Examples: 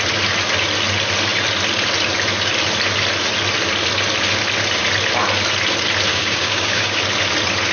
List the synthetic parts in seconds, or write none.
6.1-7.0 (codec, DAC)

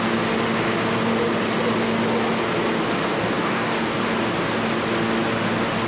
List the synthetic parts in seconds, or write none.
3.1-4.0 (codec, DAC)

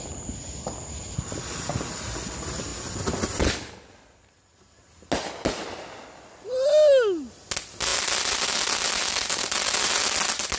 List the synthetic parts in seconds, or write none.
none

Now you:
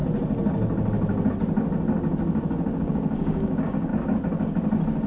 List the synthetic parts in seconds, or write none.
2.8-3.9 (codec, DAC)